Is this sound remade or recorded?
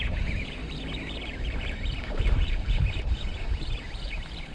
remade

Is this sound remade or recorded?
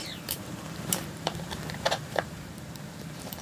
remade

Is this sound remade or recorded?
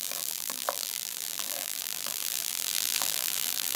remade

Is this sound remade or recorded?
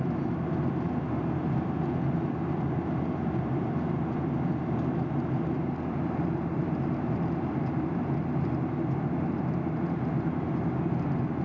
remade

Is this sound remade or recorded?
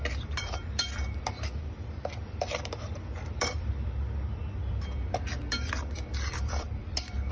remade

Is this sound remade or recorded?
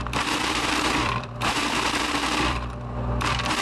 remade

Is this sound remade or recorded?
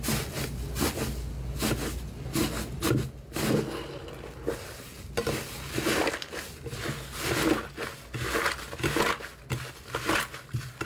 recorded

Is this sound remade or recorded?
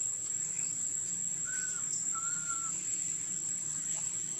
recorded